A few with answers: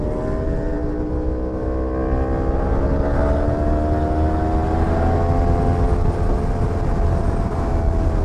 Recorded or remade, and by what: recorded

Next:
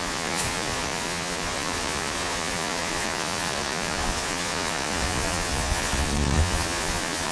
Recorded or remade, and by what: remade, vocoder, Vocos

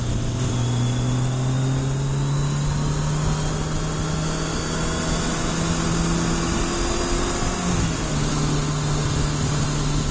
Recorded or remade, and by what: recorded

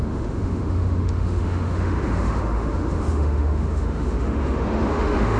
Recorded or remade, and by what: remade, autoencoder, DAC-VAE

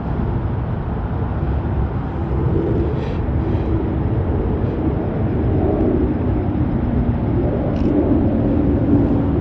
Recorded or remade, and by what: recorded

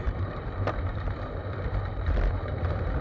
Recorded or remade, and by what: remade, vocoder, BigVGAN v2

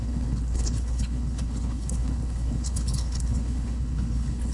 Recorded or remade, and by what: remade, codec, HILCodec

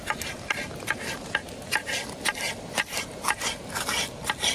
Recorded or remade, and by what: recorded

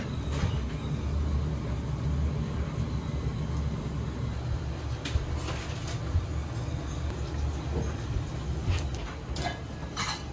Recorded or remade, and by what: recorded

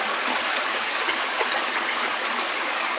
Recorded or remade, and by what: remade, codec, DAC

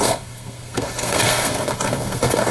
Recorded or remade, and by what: remade, codec, SNAC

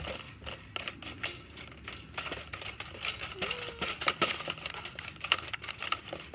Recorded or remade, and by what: recorded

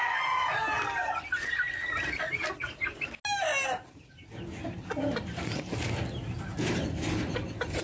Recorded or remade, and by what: recorded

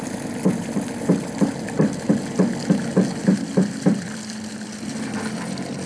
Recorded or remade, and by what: recorded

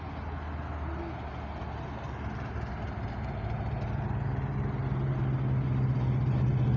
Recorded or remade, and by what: recorded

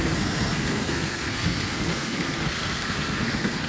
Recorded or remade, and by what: remade, codec, SNAC